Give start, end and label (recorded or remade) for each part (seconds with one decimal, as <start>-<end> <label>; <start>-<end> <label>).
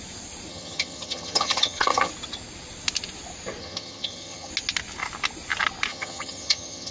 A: 0.0-0.5 recorded; 0.5-2.1 remade; 2.1-3.6 recorded; 3.6-4.5 remade; 4.5-5.9 recorded; 5.9-6.9 remade